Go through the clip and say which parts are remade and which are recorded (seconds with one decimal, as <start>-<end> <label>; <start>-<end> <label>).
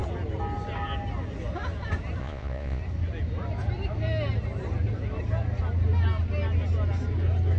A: 0.0-2.2 recorded; 2.2-2.8 remade; 2.8-7.6 recorded